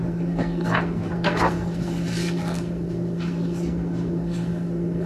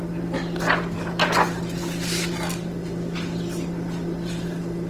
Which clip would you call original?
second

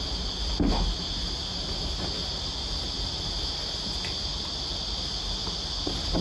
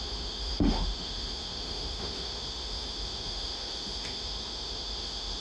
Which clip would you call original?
first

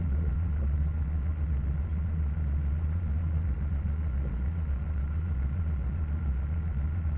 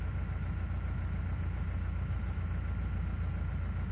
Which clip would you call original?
second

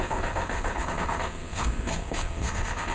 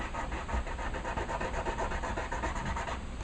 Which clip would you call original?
second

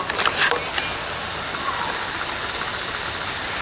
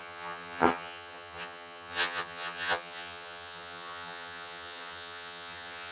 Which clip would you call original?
first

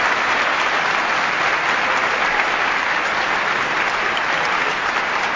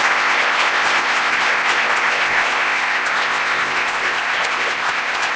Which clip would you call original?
first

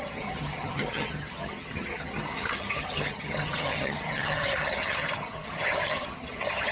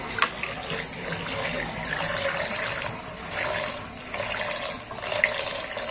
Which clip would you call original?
second